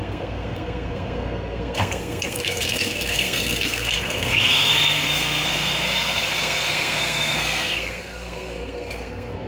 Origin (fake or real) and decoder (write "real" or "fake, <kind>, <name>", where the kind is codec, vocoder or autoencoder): fake, codec, SNAC